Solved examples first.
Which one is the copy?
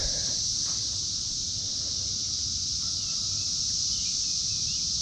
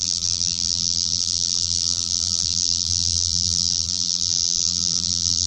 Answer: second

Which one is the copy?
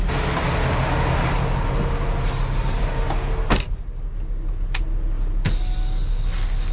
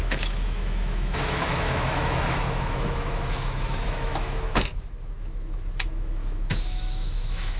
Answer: second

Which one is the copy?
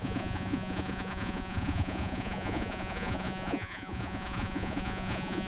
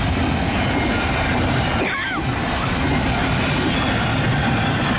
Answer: first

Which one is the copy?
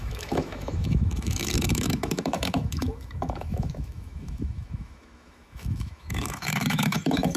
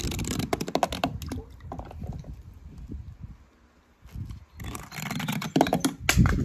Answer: first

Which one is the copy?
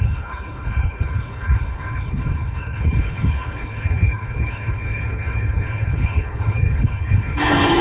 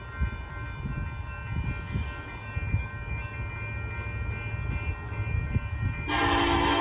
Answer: first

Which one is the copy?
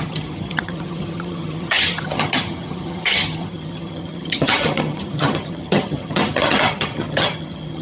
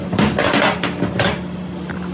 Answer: first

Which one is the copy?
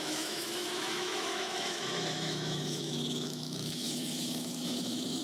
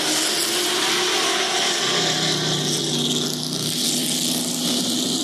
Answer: first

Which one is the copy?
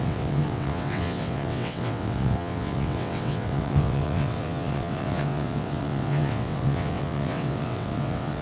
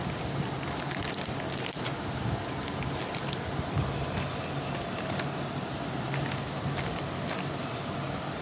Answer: first